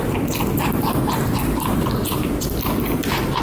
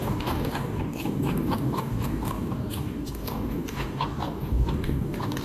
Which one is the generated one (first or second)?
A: second